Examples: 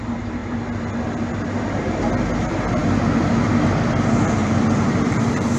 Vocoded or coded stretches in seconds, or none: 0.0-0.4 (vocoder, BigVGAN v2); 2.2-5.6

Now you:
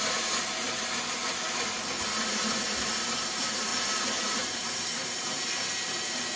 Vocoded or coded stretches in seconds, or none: 0.0-1.2 (vocoder, BigVGAN v2); 2.3-6.4

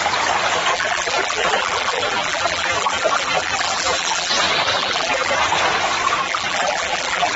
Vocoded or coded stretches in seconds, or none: 0.7-4.3 (vocoder, BigVGAN v2); 4.7-5.3; 6.2-7.4